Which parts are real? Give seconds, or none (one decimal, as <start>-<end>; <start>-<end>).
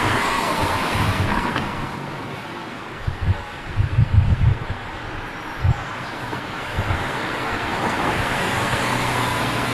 5.0-5.6